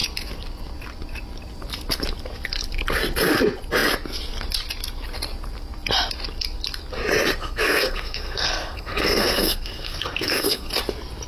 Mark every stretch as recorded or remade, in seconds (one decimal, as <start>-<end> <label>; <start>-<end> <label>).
0.0-7.4 recorded; 7.4-10.7 remade; 10.7-11.3 recorded